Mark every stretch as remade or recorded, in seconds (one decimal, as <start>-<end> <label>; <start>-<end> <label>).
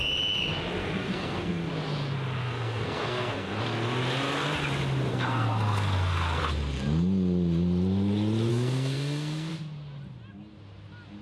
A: 0.0-0.8 recorded; 0.8-1.7 remade; 1.7-2.4 recorded; 2.4-3.6 remade; 3.6-5.1 recorded; 5.1-6.4 remade; 6.4-8.5 recorded; 8.5-9.5 remade; 9.5-11.2 recorded